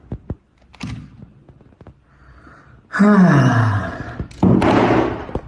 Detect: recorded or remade recorded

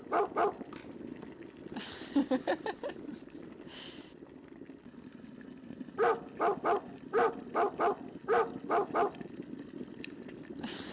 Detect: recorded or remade recorded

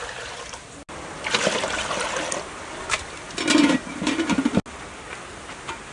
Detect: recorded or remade recorded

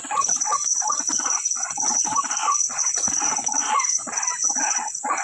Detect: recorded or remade remade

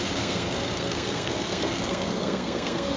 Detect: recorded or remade remade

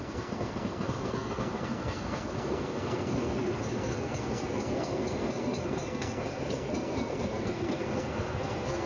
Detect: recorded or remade remade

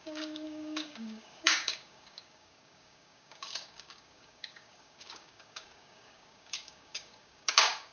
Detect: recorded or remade remade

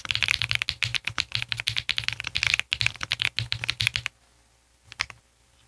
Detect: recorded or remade recorded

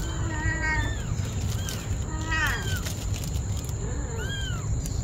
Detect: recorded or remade recorded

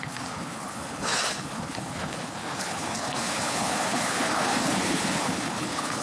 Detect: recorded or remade remade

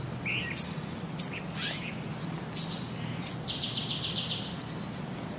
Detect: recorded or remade recorded